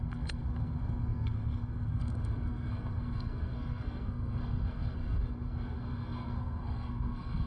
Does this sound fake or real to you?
fake